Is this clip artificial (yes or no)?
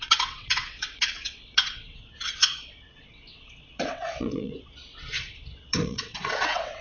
yes